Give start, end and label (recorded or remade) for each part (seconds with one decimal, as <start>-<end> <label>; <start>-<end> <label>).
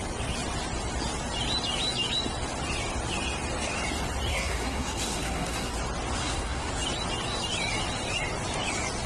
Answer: 0.0-4.3 recorded; 4.3-5.7 remade; 5.7-6.2 recorded; 6.2-6.7 remade; 6.7-9.1 recorded